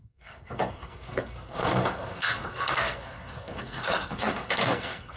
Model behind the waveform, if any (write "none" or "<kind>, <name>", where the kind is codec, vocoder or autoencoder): codec, SNAC